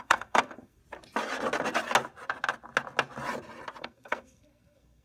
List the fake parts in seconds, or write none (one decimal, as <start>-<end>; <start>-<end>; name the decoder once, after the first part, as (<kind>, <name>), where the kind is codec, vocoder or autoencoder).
0.0-0.8 (codec, SNAC); 3.8-5.0